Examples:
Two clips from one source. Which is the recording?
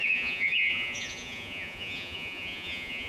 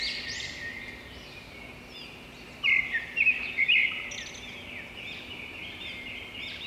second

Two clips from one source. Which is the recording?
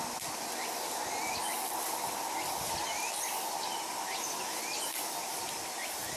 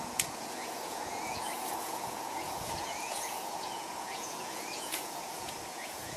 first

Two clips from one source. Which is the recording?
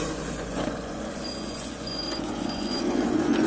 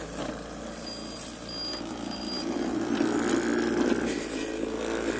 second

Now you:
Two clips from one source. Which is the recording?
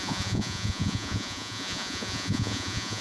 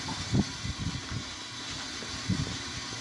second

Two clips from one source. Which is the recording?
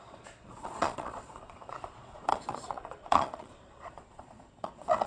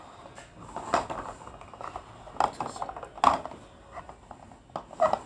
second